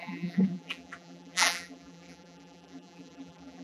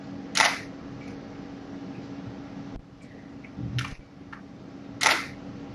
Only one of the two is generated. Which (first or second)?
first